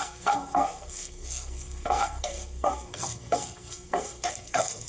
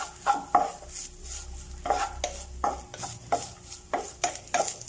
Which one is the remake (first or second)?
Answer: first